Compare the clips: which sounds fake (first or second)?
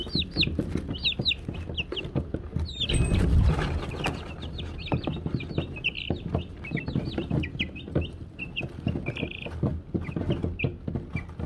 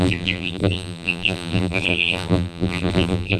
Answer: second